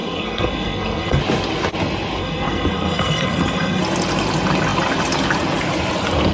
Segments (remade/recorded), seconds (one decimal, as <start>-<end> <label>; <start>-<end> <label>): 0.0-1.2 remade; 1.2-2.2 recorded; 2.2-3.8 remade; 3.8-6.3 recorded